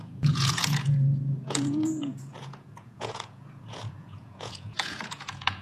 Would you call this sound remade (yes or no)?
yes